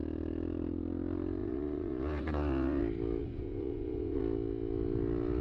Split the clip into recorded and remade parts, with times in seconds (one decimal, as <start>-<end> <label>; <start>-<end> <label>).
0.0-1.4 recorded; 1.4-2.8 remade; 2.8-3.2 recorded; 3.2-4.2 remade; 4.2-5.4 recorded